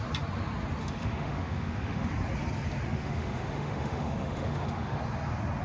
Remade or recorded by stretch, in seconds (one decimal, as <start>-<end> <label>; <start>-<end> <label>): 0.0-0.8 recorded; 0.8-2.1 remade; 2.1-2.9 recorded; 2.9-5.0 remade; 5.0-5.6 recorded